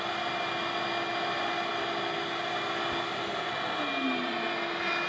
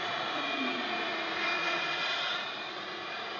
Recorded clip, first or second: first